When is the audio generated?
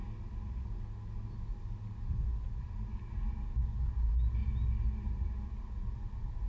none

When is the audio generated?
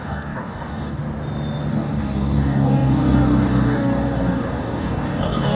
0.0-1.0 (codec, DAC); 1.7-5.5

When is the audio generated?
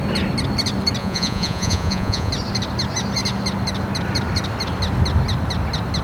1.0-2.3 (vocoder, Vocos)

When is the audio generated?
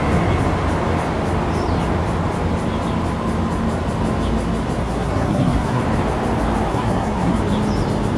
4.8-5.8 (codec, SNAC); 6.7-7.4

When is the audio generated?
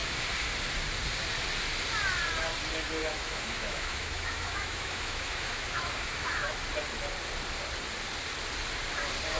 3.0-6.5 (autoencoder, DAC-VAE)